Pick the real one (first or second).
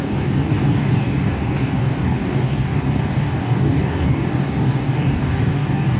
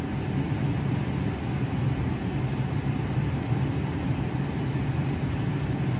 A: second